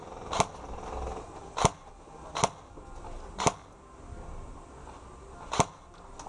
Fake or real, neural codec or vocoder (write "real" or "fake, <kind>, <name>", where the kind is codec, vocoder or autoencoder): real